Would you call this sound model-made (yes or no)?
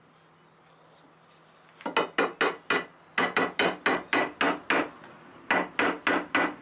no